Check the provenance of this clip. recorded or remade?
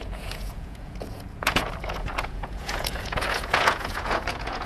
remade